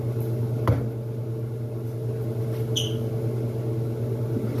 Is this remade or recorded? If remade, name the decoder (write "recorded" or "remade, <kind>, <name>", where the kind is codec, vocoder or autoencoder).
recorded